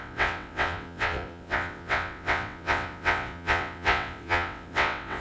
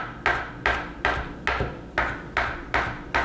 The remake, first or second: first